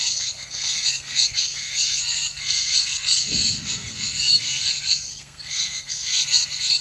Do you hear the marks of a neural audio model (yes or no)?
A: yes